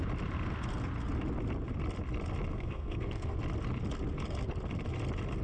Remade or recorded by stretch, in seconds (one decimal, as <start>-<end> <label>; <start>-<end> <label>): 0.0-2.5 recorded; 2.5-3.4 remade; 3.4-5.4 recorded